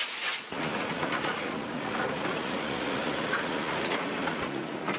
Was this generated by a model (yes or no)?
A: yes